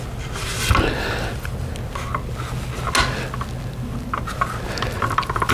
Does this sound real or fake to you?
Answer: real